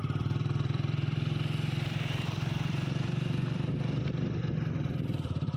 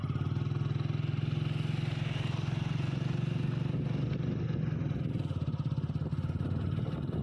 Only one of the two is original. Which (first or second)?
second